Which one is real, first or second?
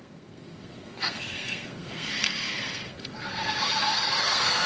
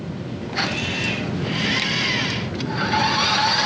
second